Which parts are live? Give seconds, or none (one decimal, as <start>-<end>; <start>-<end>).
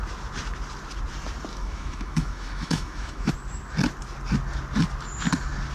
0.0-1.5; 3.3-5.7